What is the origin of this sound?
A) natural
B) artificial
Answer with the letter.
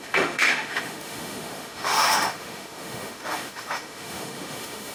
B